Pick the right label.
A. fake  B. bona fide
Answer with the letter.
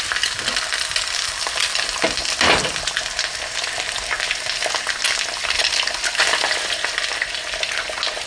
B